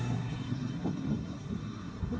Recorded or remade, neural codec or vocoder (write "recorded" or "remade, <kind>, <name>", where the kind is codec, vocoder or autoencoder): remade, codec, SNAC